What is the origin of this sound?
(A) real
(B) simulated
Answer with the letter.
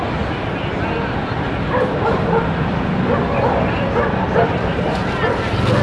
A